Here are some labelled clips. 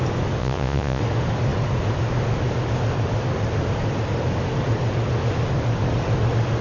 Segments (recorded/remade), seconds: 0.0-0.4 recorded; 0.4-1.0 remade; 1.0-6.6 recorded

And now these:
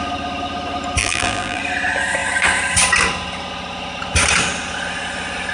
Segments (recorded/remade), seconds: 0.0-1.0 recorded; 1.0-1.6 remade; 1.6-5.5 recorded

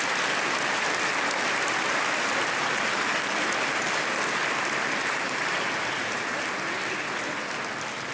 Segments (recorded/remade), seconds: 0.0-8.1 recorded

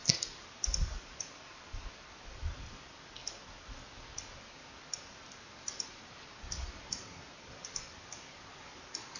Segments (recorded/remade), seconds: 0.0-9.2 recorded